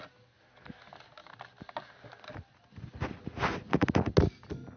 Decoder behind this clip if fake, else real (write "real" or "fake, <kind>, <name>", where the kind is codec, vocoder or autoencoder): real